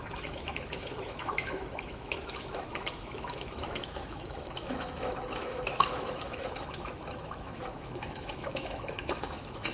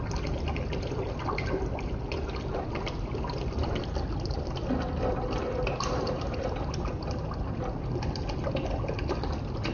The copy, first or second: first